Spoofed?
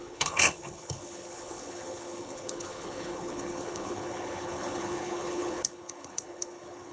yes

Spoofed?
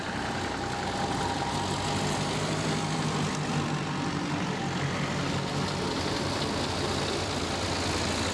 no